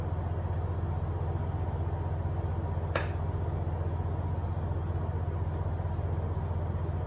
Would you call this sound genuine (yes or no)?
yes